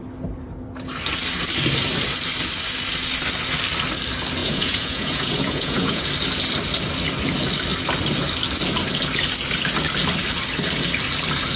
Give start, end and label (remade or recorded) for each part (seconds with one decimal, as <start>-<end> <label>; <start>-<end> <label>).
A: 0.0-4.4 recorded; 4.4-6.1 remade; 6.1-11.6 recorded